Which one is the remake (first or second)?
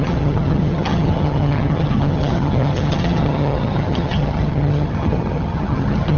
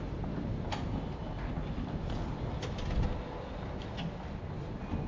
first